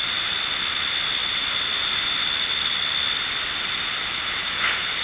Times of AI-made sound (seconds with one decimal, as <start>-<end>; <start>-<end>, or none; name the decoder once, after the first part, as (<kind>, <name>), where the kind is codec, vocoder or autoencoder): none